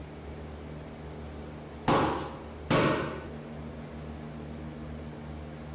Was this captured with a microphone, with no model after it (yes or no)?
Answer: yes